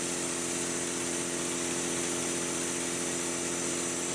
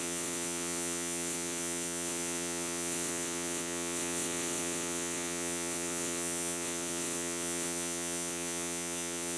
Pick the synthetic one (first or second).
second